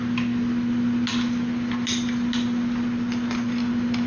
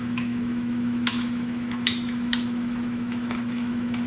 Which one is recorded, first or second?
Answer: first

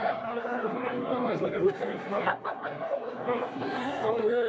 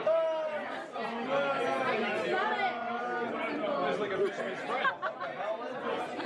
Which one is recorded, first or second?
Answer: second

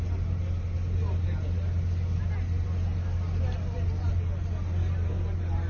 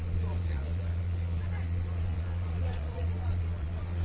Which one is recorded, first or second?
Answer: first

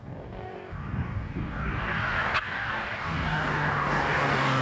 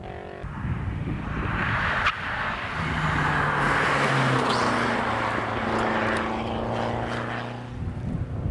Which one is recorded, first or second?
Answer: second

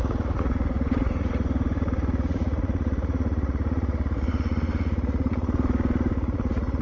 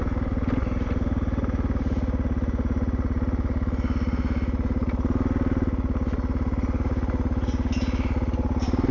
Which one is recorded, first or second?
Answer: second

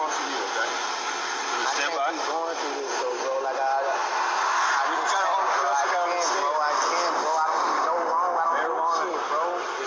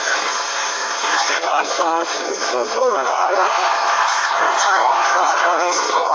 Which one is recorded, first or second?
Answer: first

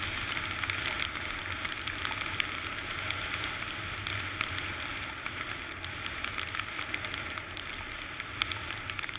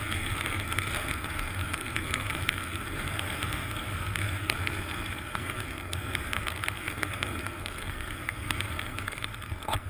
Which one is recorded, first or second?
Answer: first